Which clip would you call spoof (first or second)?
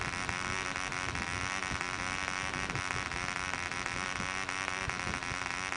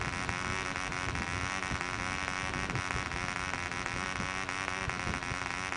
first